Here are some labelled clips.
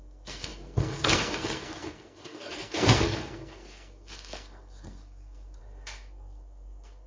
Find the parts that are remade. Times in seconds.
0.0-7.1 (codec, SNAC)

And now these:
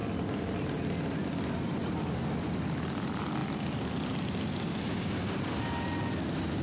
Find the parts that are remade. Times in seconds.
none

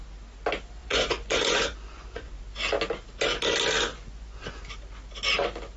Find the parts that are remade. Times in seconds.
0.8-2.4 (vocoder, Vocos); 3.9-4.6

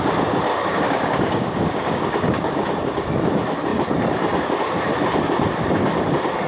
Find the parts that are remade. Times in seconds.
0.5-3.1 (codec, DAC)

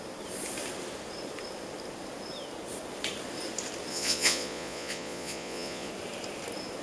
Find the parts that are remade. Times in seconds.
3.9-5.9 (vocoder, Vocos)